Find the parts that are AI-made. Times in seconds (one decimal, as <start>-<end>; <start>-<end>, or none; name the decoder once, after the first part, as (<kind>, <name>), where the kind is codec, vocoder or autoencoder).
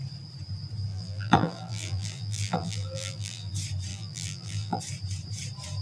0.9-3.5 (vocoder, BigVGAN v2); 3.9-4.8